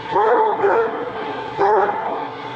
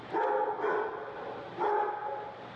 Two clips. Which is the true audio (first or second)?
second